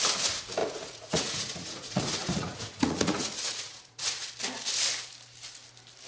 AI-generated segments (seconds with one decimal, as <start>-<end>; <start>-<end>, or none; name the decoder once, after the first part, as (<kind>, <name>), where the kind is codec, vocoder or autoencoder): 0.6-4.3 (vocoder, Vocos)